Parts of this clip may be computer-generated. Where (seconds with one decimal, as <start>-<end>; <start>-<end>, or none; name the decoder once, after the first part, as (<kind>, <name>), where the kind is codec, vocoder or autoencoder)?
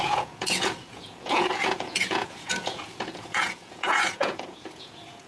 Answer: 0.0-5.3 (vocoder, Vocos)